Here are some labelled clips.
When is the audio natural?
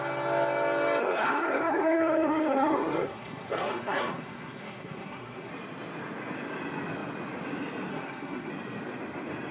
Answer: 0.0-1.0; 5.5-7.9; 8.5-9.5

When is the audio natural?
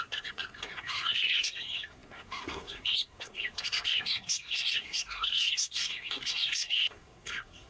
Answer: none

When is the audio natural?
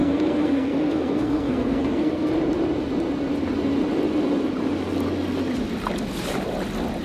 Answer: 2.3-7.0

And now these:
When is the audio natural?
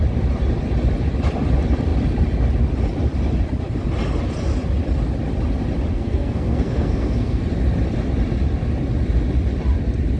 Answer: 0.0-5.9; 7.4-10.2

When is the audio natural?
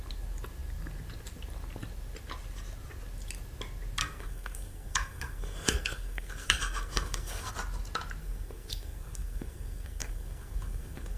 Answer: 0.0-4.0; 7.5-8.2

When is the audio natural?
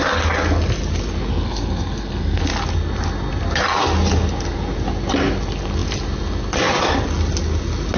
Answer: 0.0-1.3; 2.4-8.0